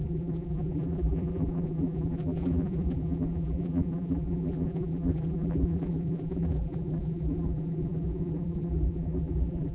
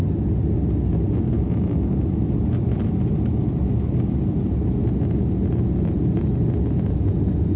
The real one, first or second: second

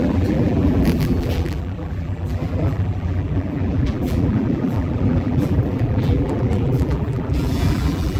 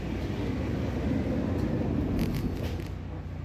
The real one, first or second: second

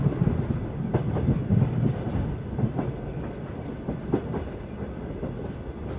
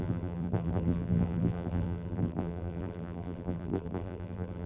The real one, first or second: first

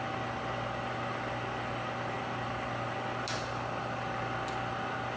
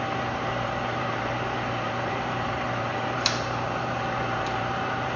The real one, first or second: first